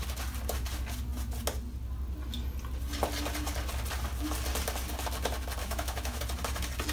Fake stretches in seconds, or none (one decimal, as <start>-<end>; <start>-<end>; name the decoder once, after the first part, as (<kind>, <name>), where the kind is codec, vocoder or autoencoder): 5.6-6.2 (autoencoder, DAC-VAE)